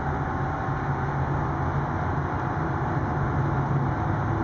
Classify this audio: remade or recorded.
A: recorded